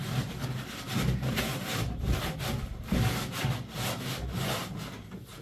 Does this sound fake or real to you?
real